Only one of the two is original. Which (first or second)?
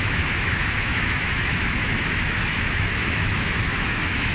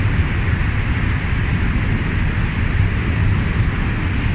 second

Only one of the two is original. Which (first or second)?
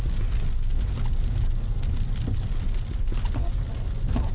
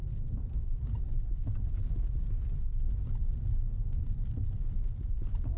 first